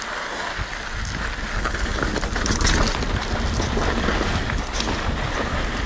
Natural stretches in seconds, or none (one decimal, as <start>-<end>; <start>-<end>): 0.0-5.9